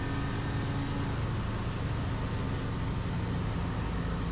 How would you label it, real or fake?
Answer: real